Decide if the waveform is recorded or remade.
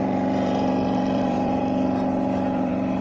remade